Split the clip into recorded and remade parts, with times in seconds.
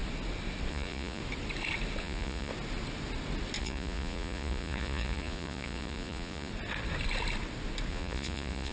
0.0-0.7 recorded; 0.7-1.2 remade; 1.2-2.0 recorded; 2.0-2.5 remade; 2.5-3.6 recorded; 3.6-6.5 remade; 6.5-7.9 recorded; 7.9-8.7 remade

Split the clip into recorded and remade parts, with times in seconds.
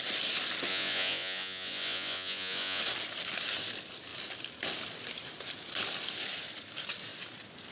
0.0-0.7 recorded; 0.7-2.8 remade; 2.8-7.7 recorded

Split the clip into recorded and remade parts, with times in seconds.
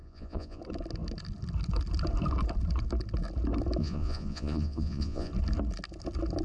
0.0-0.6 remade; 0.6-3.8 recorded; 3.8-5.3 remade; 5.3-6.4 recorded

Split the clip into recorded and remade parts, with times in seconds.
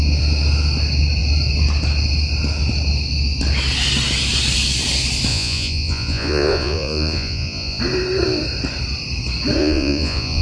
0.0-5.3 recorded; 5.3-7.8 remade; 7.8-9.6 recorded; 9.6-10.4 remade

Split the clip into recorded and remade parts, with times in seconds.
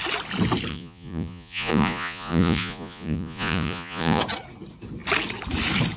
0.0-0.7 recorded; 0.7-4.2 remade; 4.2-6.0 recorded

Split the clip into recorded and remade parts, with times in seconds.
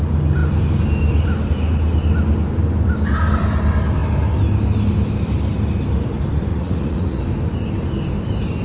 0.0-6.5 recorded; 6.5-7.2 remade; 7.2-8.6 recorded